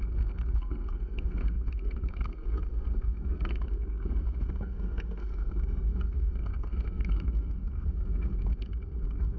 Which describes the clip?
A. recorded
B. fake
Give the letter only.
B